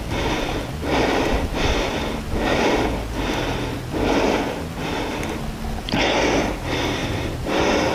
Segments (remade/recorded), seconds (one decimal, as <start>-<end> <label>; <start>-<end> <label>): 0.0-7.0 recorded; 7.0-7.5 remade; 7.5-7.9 recorded